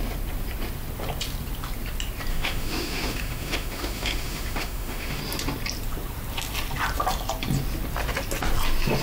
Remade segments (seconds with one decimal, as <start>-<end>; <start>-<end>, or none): 2.3-5.2